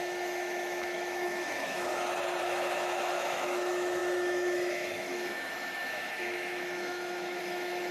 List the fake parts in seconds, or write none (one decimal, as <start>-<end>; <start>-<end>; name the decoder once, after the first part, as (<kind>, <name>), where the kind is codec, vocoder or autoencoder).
0.0-1.9 (autoencoder, DAC-VAE); 2.4-7.9